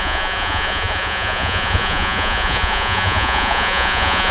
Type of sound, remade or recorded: remade